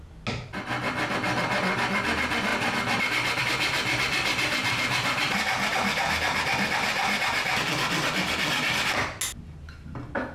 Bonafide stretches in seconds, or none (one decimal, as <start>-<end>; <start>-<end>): 0.0-10.3